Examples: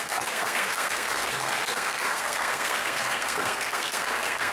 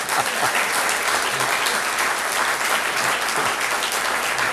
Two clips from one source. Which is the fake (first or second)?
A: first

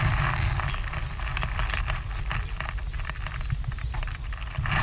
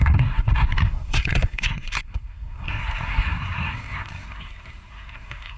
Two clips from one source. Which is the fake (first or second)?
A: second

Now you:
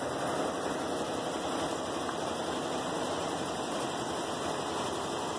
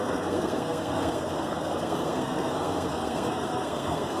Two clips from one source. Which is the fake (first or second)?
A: second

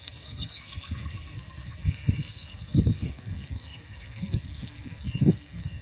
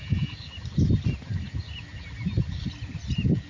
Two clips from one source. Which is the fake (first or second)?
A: first